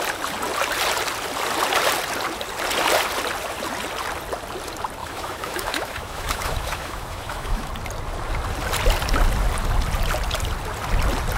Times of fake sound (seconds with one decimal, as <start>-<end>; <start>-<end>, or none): 5.0-7.7